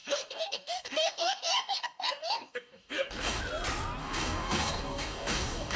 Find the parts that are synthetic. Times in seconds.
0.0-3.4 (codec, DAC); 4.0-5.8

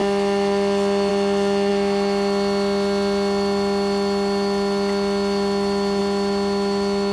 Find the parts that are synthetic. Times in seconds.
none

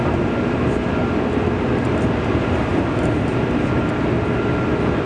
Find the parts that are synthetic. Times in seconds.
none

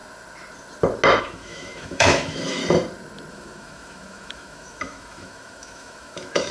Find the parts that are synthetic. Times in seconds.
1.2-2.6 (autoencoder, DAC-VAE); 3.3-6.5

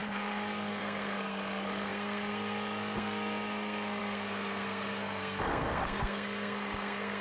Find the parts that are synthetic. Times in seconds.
0.0-7.2 (codec, SNAC)